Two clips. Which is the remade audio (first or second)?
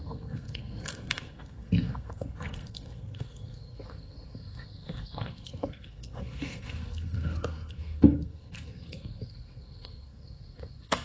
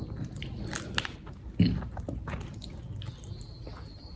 first